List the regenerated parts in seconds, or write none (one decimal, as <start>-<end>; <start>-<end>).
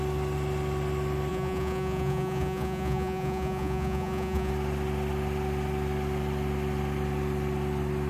1.3-4.5